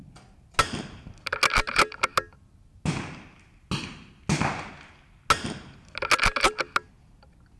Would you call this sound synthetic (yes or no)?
no